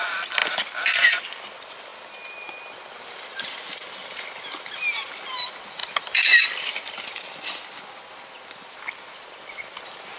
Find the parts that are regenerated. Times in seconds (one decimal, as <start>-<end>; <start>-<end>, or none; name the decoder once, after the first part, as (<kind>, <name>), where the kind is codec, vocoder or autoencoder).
none

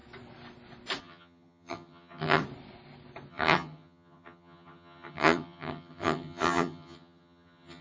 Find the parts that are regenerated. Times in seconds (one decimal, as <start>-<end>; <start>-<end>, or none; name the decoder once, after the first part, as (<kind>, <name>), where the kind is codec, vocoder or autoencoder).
1.0-2.4 (vocoder, HiFi-GAN); 3.3-7.8

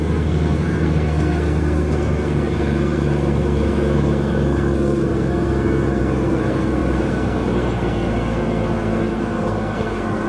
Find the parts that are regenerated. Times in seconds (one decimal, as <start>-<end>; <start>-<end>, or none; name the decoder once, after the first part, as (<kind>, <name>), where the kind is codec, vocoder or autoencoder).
0.0-10.3 (codec, SNAC)

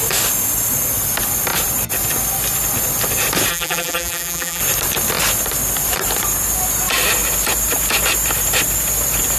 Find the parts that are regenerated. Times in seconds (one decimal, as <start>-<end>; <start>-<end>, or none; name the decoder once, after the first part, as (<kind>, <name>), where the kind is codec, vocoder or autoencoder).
3.5-4.6 (vocoder, BigVGAN v2)

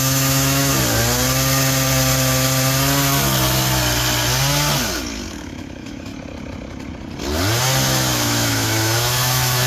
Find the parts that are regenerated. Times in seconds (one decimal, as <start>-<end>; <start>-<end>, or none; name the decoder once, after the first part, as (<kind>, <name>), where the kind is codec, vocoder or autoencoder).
0.0-0.7 (autoencoder, DAC-VAE); 5.3-6.1; 7.8-9.7

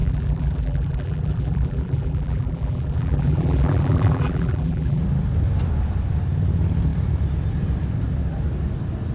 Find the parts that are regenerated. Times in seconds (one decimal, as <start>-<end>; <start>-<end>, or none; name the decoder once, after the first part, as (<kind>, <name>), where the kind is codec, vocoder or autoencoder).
0.0-5.0 (vocoder, BigVGAN v2)

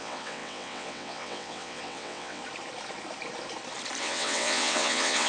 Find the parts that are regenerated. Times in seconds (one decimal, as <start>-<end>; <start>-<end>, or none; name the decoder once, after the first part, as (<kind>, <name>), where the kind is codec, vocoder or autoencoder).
0.0-2.4 (vocoder, WaveNeXt); 4.0-5.3